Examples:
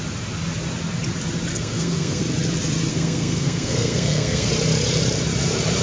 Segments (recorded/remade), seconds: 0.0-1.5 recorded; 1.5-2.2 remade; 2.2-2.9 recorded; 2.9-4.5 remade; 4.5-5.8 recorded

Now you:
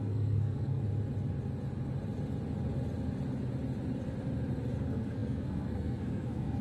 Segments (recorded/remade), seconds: 0.0-0.8 remade; 0.8-4.8 recorded; 4.8-6.6 remade

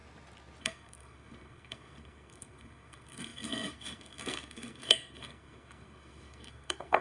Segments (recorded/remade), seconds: 0.0-0.6 recorded; 0.6-7.0 remade

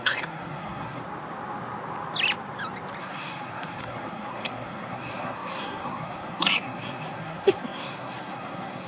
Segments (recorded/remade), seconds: 0.0-1.0 remade; 1.0-3.0 recorded; 3.0-8.9 remade

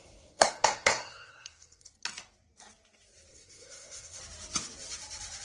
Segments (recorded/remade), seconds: 0.0-1.9 remade; 1.9-3.3 recorded; 3.3-4.2 remade; 4.2-5.4 recorded

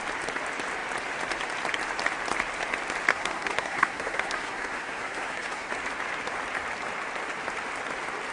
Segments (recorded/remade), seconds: 0.0-3.1 recorded; 3.1-5.7 remade; 5.7-8.3 recorded

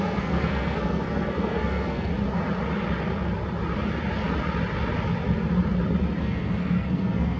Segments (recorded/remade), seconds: 0.0-2.1 remade; 2.1-6.2 recorded; 6.2-7.4 remade